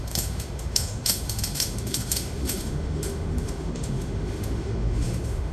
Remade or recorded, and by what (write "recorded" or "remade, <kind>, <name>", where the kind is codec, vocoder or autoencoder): remade, autoencoder, DAC-VAE